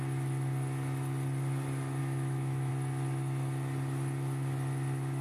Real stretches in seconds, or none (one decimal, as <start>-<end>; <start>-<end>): 0.0-2.0; 2.7-5.2